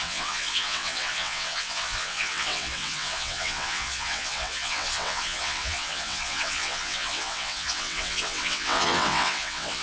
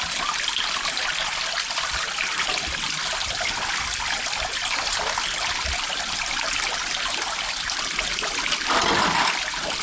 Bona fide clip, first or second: second